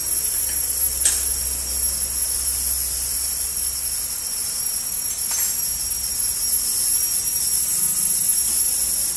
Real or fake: real